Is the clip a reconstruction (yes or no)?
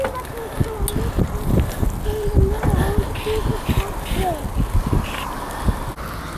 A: no